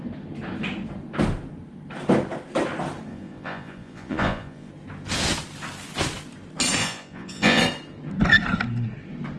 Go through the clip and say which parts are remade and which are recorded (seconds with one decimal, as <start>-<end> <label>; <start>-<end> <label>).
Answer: 0.0-3.1 recorded; 3.1-4.7 remade; 4.7-6.8 recorded; 6.8-7.6 remade; 7.6-9.4 recorded